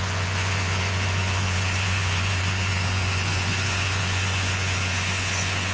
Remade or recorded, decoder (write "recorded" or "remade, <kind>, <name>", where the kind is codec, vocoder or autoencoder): remade, vocoder, Vocos